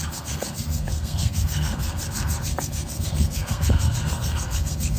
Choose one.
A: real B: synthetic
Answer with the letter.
B